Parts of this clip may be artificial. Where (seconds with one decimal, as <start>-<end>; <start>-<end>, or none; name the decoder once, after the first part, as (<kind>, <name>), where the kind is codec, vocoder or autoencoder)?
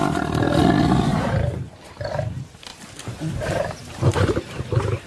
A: 1.1-1.8 (vocoder, BigVGAN v2); 2.7-4.6